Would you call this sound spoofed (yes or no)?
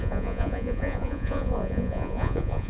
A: yes